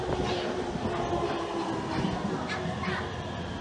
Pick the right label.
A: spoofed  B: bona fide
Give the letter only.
B